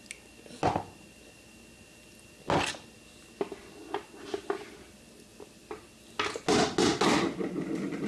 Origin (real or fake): real